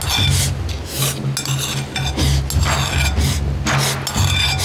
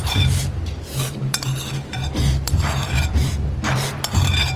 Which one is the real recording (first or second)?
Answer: first